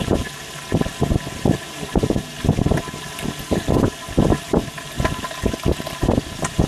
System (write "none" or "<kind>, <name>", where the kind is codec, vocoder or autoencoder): none